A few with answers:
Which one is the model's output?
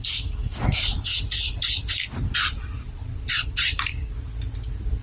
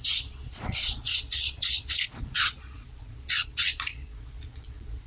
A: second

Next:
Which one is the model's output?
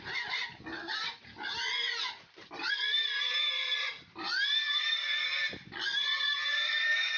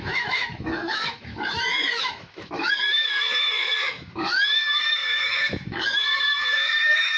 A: second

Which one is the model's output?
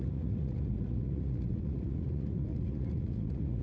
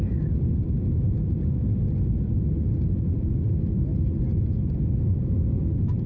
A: first